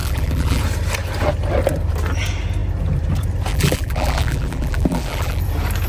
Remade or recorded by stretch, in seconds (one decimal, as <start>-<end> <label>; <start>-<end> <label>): 0.0-0.6 remade; 0.6-3.5 recorded; 3.5-5.4 remade; 5.4-5.9 recorded